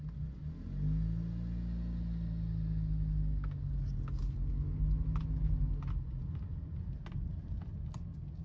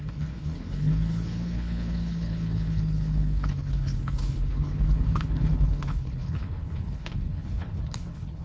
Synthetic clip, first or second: second